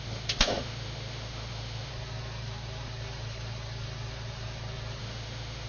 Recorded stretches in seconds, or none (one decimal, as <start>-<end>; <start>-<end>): 1.9-5.0